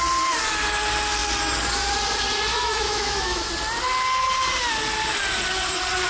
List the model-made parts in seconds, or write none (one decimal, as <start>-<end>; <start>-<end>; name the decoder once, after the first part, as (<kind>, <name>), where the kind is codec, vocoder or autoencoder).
2.5-3.5 (autoencoder, DAC-VAE)